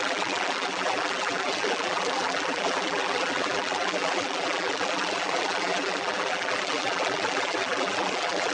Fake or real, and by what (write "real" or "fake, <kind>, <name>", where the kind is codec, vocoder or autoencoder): fake, vocoder, BigVGAN v2